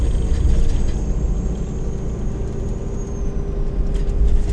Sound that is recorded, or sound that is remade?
recorded